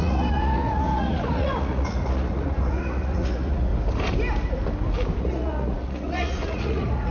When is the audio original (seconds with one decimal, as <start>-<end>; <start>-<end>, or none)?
3.7-5.2